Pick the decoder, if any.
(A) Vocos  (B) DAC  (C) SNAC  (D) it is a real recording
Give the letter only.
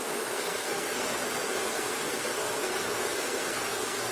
C